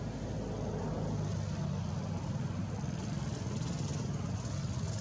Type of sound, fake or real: real